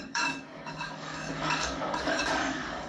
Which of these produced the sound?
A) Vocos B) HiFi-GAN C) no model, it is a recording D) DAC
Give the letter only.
D